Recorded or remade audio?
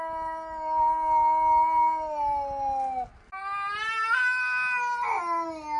recorded